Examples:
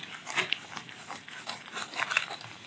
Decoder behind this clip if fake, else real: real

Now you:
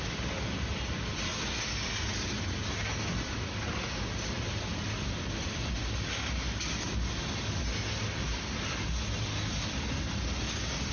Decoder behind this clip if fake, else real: real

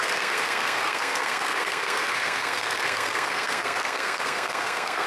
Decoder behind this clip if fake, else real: fake, codec, SNAC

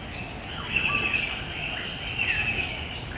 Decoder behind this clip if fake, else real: real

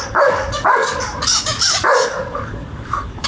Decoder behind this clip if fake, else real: fake, codec, DAC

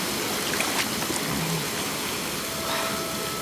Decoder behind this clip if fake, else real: real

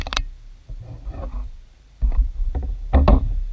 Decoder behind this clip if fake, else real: real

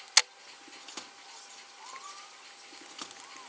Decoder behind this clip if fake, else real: real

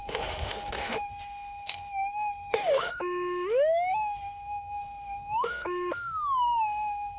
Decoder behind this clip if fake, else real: fake, autoencoder, DAC-VAE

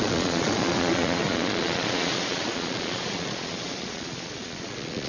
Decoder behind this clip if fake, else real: fake, vocoder, Vocos